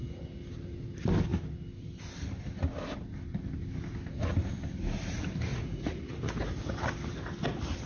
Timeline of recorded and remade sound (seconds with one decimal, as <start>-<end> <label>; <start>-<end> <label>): 0.0-5.5 recorded; 5.5-6.1 remade; 6.1-7.9 recorded

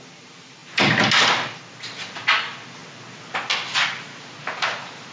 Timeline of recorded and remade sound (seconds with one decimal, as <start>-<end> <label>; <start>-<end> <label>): 0.0-5.1 recorded

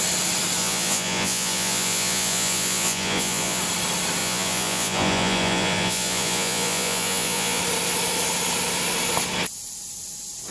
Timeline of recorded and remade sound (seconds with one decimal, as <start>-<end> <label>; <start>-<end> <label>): 0.0-0.6 recorded; 0.6-3.6 remade; 3.6-4.2 recorded; 4.2-7.6 remade; 7.6-10.5 recorded

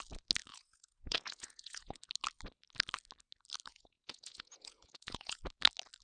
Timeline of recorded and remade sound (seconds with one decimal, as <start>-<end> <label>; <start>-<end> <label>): 0.0-0.5 recorded; 0.5-2.0 remade; 2.0-3.7 recorded; 3.7-5.4 remade; 5.4-6.0 recorded

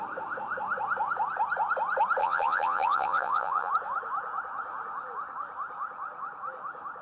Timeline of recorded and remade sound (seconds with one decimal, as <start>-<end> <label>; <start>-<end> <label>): 0.0-2.2 recorded; 2.2-3.7 remade; 3.7-7.0 recorded